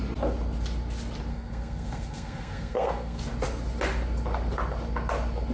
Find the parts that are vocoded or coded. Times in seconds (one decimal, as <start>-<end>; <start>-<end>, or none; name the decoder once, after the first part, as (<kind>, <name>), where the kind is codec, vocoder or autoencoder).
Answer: 1.3-3.2 (codec, SNAC)